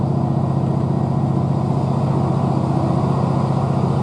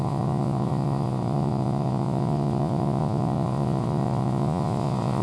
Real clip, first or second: first